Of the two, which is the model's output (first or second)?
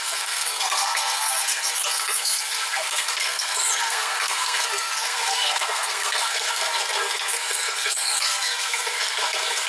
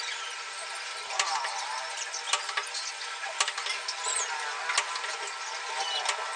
first